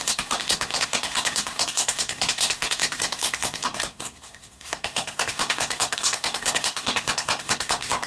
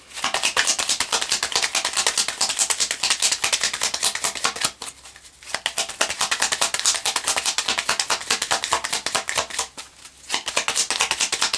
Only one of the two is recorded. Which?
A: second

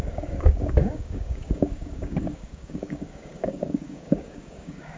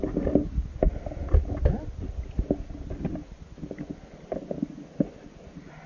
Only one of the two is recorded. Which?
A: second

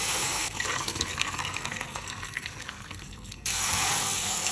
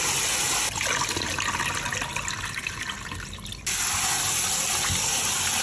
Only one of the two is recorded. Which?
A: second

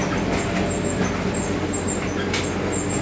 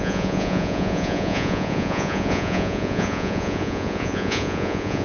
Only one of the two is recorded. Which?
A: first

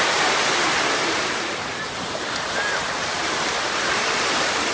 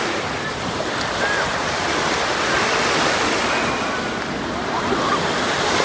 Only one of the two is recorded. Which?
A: second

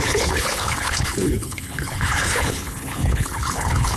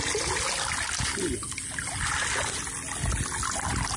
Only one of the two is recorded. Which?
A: second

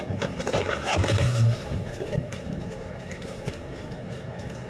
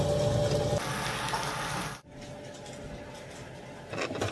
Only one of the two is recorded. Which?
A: second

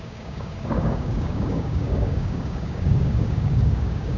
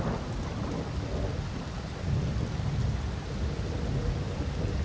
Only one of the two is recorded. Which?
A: second